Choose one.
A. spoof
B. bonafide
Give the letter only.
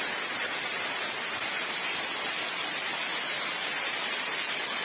B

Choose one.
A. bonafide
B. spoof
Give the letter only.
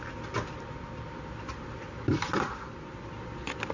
A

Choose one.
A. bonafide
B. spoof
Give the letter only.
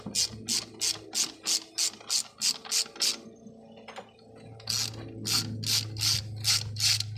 A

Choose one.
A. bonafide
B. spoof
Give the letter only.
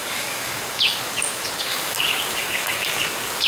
B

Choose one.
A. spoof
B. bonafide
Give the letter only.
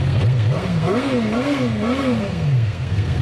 A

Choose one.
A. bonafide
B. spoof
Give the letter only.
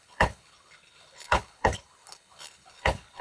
B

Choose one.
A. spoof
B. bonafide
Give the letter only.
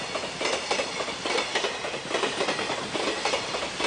B